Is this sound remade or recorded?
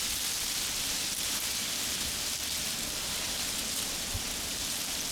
recorded